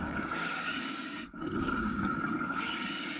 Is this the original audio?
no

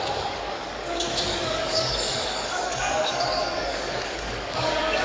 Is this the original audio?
no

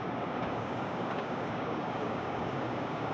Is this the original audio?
no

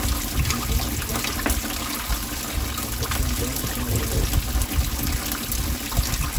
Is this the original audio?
yes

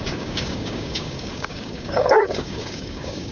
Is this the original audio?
no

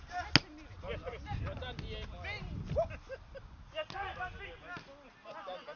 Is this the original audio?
yes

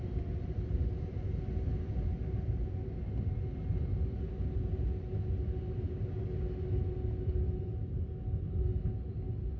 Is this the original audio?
yes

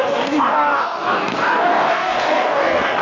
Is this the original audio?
no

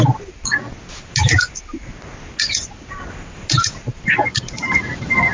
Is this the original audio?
yes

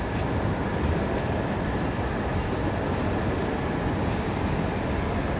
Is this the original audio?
yes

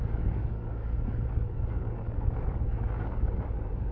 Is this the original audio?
no